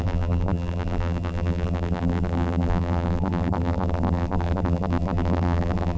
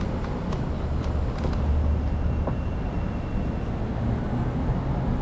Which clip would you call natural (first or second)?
second